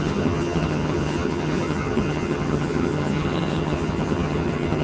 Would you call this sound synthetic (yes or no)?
yes